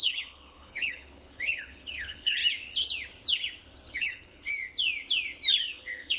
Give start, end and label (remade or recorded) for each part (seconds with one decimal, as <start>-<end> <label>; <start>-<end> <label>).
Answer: 0.0-2.4 remade; 2.4-3.9 recorded; 3.9-4.5 remade; 4.5-5.7 recorded; 5.7-6.2 remade